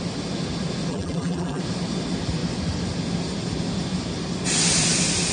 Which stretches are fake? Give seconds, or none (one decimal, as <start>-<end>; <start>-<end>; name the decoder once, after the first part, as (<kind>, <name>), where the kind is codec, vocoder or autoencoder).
0.9-1.6 (vocoder, BigVGAN v2)